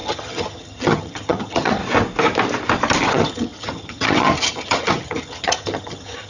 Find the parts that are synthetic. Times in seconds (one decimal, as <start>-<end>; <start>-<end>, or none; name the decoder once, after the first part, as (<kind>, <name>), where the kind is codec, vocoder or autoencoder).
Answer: 0.0-1.8 (vocoder, HiFi-GAN); 3.1-6.3